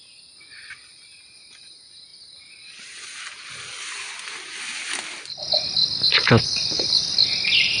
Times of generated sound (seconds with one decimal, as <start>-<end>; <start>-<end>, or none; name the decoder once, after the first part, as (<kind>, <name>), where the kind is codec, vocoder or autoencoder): none